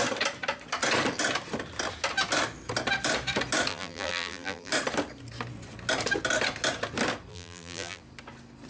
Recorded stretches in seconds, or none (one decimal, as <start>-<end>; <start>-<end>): 0.0-3.7; 4.7-7.3; 8.0-8.7